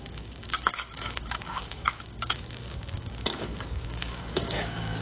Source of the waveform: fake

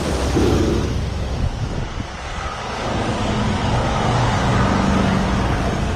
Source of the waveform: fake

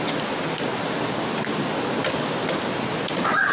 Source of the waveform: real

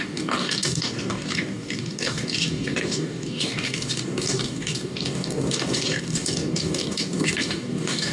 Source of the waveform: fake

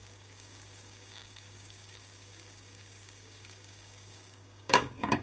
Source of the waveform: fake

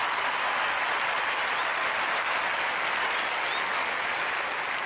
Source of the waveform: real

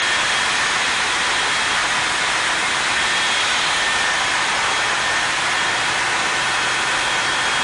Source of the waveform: real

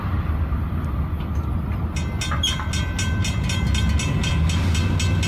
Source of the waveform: real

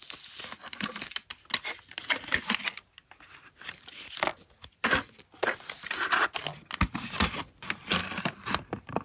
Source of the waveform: real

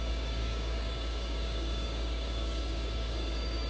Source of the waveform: fake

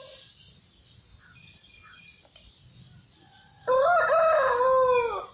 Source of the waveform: real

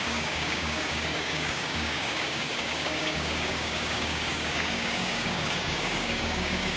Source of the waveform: fake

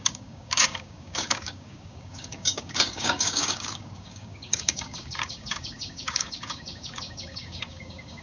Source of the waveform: fake